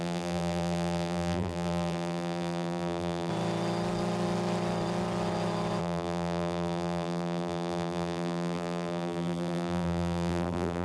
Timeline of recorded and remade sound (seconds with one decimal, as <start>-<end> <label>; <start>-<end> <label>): 0.0-3.3 remade; 3.3-5.8 recorded; 5.8-10.8 remade